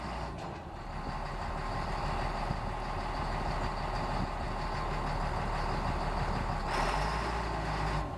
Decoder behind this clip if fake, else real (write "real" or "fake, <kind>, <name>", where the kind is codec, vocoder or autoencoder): real